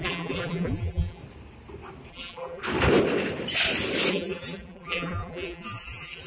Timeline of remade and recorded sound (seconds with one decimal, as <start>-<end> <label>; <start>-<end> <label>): 0.0-1.2 remade; 1.2-2.1 recorded; 2.1-2.6 remade; 2.6-4.1 recorded; 4.1-6.3 remade

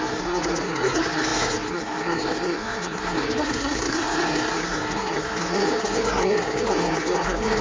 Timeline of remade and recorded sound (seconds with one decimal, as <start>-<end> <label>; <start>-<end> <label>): 0.0-7.6 remade

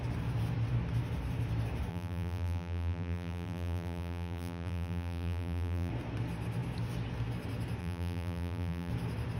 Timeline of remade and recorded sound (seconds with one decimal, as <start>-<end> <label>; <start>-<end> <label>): 0.0-1.9 recorded; 1.9-5.9 remade; 5.9-7.8 recorded; 7.8-8.9 remade; 8.9-9.4 recorded

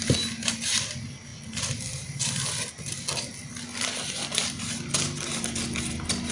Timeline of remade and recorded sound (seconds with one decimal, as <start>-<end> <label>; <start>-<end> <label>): 0.0-6.3 recorded

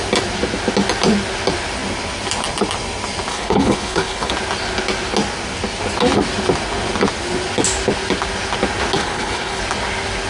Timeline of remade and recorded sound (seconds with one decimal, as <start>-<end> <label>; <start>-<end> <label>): 0.0-3.3 recorded; 3.3-4.3 remade; 4.3-9.0 recorded; 9.0-9.6 remade; 9.6-10.3 recorded

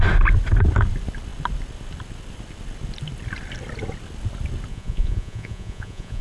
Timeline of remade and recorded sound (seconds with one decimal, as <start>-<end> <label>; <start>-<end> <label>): 0.0-4.7 recorded; 4.7-6.2 remade

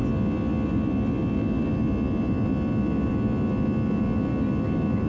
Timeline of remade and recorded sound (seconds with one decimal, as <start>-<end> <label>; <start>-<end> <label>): 0.0-5.1 recorded

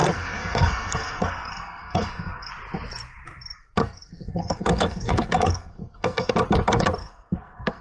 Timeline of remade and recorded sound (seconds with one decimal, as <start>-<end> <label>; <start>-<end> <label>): 0.0-2.5 remade; 2.5-3.8 recorded; 3.8-6.3 remade; 6.3-7.0 recorded; 7.0-7.8 remade